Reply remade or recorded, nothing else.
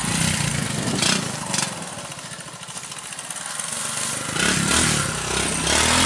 recorded